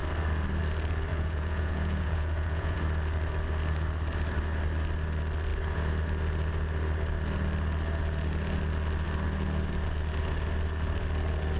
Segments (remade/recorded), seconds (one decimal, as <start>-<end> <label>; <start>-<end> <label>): 0.0-1.1 recorded; 1.1-2.8 remade; 2.8-11.6 recorded